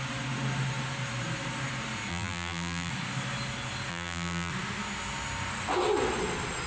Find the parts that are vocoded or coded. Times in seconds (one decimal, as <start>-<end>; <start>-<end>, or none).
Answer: 2.1-2.9; 3.9-4.5